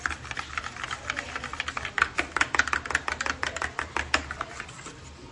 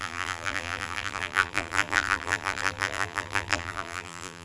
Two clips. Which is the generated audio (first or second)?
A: second